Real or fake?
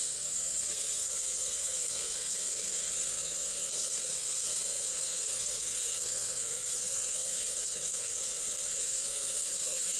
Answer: fake